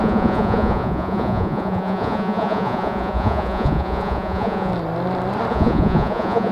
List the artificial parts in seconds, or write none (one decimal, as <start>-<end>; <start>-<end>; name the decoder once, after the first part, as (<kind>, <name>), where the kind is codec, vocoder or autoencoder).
0.0-4.7 (vocoder, Vocos); 5.5-6.5